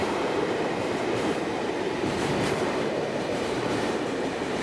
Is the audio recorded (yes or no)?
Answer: no